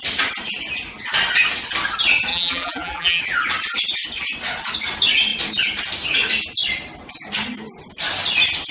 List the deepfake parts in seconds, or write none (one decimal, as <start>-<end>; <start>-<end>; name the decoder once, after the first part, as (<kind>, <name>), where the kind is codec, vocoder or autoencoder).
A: 2.3-3.2 (vocoder, BigVGAN v2)